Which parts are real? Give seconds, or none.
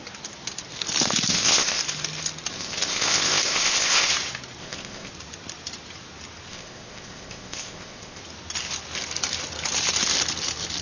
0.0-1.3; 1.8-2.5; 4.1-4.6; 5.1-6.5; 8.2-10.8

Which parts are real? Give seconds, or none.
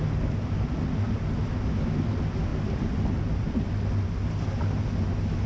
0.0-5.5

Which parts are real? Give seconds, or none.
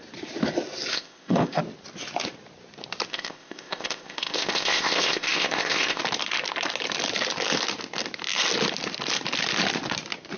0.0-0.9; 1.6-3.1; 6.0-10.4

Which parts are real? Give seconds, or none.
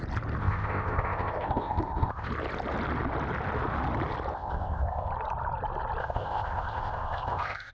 0.0-0.4; 2.3-4.3; 5.1-6.0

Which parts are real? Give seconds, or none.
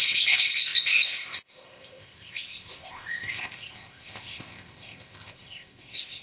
none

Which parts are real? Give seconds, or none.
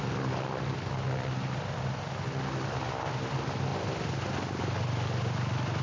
0.0-5.8